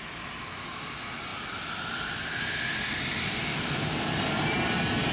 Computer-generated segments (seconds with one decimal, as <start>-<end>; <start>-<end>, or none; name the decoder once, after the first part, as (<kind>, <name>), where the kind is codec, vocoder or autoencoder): none